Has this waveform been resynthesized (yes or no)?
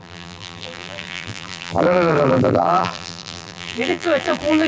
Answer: yes